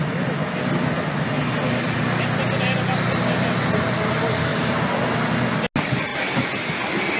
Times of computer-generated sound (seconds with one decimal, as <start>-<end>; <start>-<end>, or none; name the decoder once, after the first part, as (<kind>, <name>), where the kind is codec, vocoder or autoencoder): 1.8-3.6 (vocoder, BigVGAN v2); 4.5-5.0; 6.1-7.2

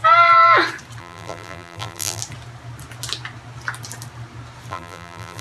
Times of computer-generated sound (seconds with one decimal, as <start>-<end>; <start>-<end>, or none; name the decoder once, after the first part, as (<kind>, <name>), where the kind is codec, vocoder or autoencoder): 1.0-2.2 (vocoder, BigVGAN v2); 4.7-5.4

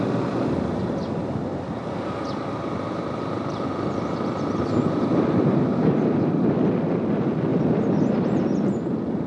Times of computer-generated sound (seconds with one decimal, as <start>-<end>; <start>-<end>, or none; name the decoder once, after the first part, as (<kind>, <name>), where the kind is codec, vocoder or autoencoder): 1.5-6.3 (vocoder, BigVGAN v2)

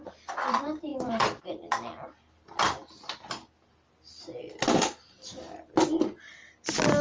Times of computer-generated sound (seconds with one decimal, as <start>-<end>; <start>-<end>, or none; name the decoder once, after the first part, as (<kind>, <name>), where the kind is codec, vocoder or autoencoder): 0.0-2.8 (vocoder, BigVGAN v2)

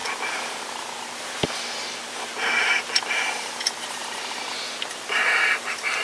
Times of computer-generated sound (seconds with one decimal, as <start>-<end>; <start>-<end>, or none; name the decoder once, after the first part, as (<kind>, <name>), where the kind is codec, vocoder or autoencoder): 3.6-4.0 (vocoder, BigVGAN v2); 4.9-6.0

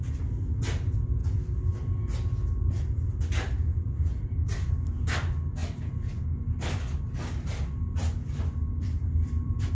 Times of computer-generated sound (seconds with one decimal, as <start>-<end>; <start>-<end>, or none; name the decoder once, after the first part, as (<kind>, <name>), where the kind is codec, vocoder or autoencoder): 3.7-4.7 (vocoder, BigVGAN v2); 5.6-9.7